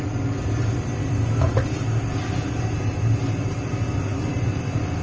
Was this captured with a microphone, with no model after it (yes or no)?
yes